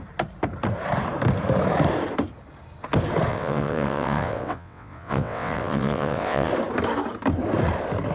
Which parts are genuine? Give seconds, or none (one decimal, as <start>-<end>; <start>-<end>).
0.0-3.3; 6.5-8.1